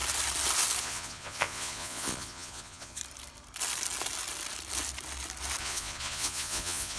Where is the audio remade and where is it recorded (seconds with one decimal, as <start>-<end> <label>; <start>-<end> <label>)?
0.0-0.8 recorded; 0.8-3.0 remade; 3.0-5.6 recorded; 5.6-7.0 remade